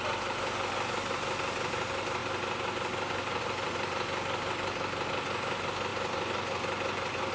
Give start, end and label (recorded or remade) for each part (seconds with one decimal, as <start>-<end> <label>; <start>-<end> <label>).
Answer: 0.0-7.3 recorded

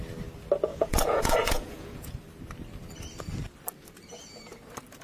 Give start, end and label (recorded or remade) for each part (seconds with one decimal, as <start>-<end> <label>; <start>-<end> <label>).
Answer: 0.0-0.7 recorded; 0.7-2.1 remade; 2.1-5.0 recorded

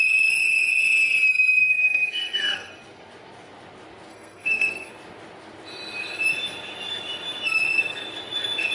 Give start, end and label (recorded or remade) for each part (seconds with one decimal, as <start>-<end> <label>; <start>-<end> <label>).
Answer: 0.0-1.6 recorded; 1.6-2.7 remade; 2.7-4.1 recorded; 4.1-4.9 remade; 4.9-8.7 recorded

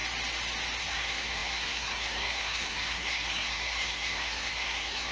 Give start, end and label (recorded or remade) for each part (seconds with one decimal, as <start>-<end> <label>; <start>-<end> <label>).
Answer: 0.0-0.8 recorded; 0.8-5.1 remade